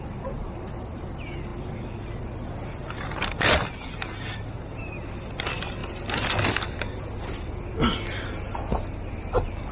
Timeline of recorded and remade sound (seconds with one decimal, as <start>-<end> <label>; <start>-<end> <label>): 0.0-9.7 recorded